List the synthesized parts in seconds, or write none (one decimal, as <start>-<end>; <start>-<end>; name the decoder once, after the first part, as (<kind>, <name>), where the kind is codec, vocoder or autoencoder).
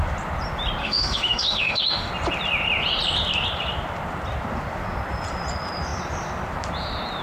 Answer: 0.8-2.1 (autoencoder, DAC-VAE)